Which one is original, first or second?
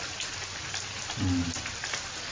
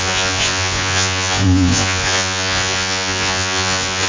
first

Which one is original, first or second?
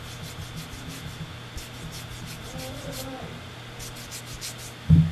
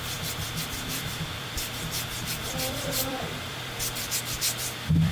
first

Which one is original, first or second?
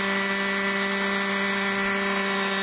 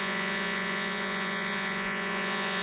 first